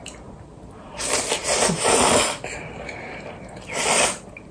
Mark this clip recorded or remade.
remade